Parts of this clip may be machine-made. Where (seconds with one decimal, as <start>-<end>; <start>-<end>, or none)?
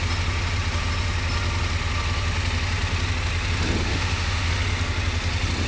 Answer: 3.9-4.5